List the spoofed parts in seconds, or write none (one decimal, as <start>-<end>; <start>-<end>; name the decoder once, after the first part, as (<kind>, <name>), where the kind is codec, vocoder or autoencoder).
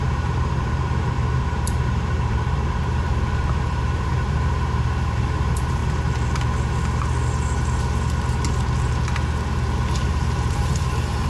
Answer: 0.0-5.8 (vocoder, BigVGAN v2); 10.0-11.3